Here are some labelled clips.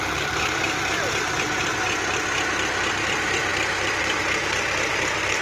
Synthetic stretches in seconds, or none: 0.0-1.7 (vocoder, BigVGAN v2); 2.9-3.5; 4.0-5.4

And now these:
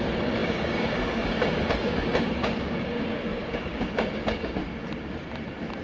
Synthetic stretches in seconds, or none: 0.0-4.6 (codec, DAC)

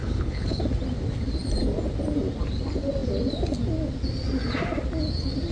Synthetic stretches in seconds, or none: 0.0-0.6 (codec, HILCodec)